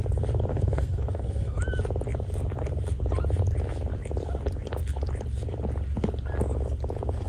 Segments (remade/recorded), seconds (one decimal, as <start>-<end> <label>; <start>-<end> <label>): 0.0-0.5 recorded; 0.5-1.6 remade; 1.6-7.3 recorded